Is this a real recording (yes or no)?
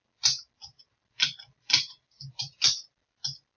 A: yes